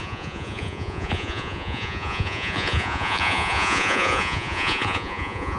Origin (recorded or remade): remade